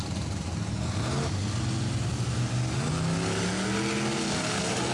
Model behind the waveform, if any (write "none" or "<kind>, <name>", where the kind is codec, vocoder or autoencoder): none